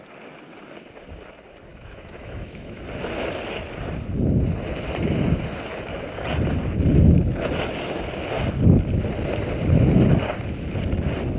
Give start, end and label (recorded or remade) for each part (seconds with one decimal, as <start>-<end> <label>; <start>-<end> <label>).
0.0-1.7 recorded; 1.7-2.8 remade; 2.8-11.4 recorded